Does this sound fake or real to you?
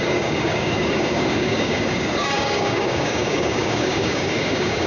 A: fake